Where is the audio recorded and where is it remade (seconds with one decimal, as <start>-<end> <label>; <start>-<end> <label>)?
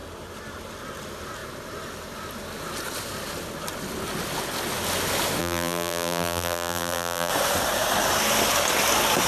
0.0-5.4 recorded; 5.4-7.3 remade; 7.3-9.3 recorded